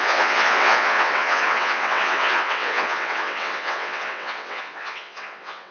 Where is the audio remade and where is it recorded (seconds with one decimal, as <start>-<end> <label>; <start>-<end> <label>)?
0.0-5.7 remade